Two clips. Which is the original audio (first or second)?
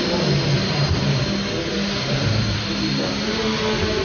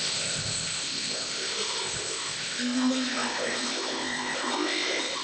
first